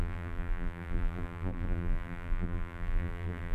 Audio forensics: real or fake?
fake